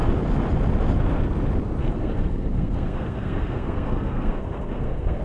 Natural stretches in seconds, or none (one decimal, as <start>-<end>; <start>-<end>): 0.0-1.8